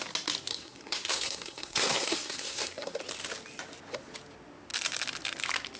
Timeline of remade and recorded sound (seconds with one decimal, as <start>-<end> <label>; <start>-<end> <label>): 0.0-0.5 recorded; 0.5-3.0 remade; 3.0-5.8 recorded